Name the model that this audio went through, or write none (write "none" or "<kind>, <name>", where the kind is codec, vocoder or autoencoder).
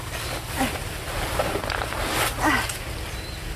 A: none